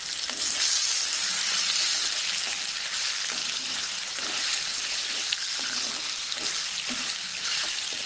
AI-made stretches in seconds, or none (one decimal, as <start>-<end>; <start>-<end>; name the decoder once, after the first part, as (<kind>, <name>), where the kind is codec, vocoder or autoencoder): 3.4-4.0 (vocoder, BigVGAN v2); 4.7-5.7